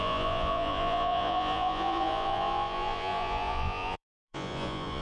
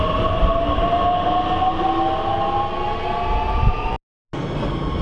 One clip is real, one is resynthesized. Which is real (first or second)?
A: second